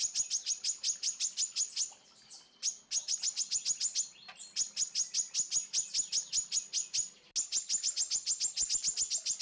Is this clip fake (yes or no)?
no